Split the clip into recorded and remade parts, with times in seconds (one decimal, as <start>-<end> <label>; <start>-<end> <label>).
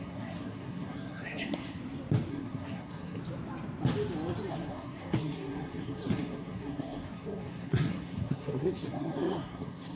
0.0-1.8 remade; 1.8-2.3 recorded; 2.3-3.2 remade; 3.2-4.5 recorded; 4.5-10.0 remade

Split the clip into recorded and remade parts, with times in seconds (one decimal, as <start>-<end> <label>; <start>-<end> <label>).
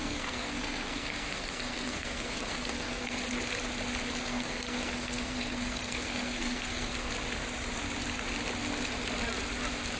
0.0-3.2 remade; 3.2-4.2 recorded; 4.2-7.1 remade; 7.1-10.0 recorded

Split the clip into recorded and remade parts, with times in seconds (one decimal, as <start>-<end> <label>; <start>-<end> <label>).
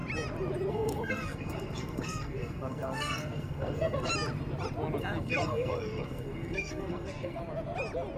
0.0-0.7 recorded; 0.7-4.1 remade; 4.1-5.0 recorded; 5.0-7.4 remade; 7.4-8.2 recorded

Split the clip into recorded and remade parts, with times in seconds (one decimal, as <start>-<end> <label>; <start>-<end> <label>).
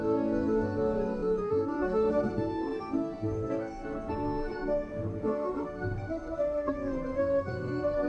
0.0-8.1 remade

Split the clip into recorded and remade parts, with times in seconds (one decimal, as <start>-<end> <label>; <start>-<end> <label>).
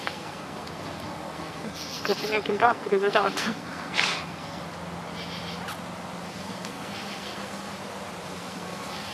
0.0-4.6 remade; 4.6-6.3 recorded; 6.3-7.7 remade; 7.7-8.3 recorded; 8.3-9.1 remade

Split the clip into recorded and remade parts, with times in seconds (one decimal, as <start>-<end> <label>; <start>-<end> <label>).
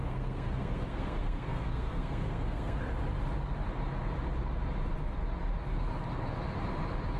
0.0-2.8 remade; 2.8-7.2 recorded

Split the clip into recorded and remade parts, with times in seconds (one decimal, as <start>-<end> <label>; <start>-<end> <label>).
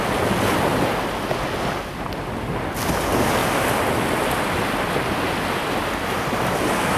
0.0-7.0 recorded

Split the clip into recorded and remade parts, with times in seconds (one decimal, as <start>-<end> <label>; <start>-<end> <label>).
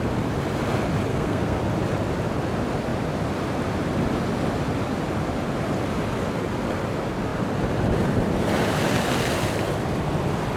0.0-1.1 recorded; 1.1-1.6 remade; 1.6-10.6 recorded